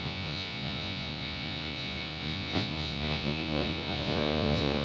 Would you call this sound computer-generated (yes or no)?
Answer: yes